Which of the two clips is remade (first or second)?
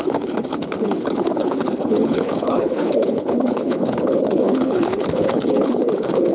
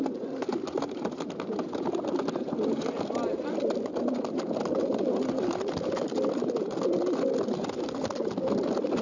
first